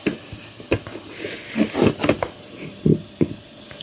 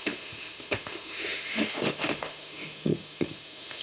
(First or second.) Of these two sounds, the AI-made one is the second